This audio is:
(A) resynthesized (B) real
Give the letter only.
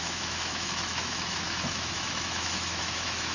A